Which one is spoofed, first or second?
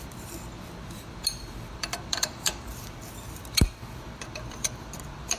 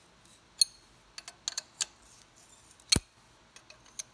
first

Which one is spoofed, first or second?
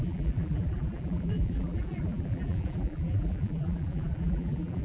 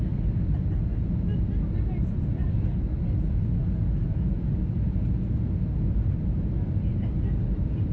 first